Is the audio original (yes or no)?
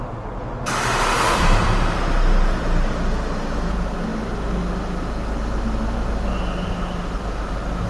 yes